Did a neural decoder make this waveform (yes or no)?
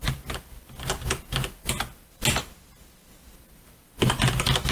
no